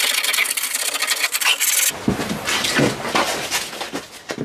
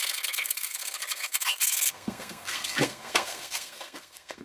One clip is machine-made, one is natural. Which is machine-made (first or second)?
second